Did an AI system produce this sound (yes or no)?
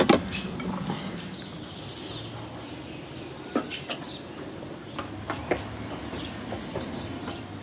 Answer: no